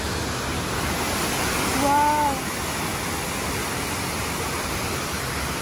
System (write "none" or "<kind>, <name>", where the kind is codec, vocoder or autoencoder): none